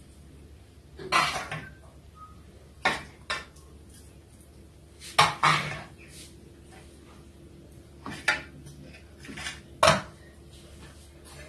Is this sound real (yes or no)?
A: yes